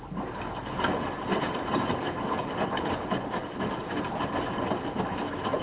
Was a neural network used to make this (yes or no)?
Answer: no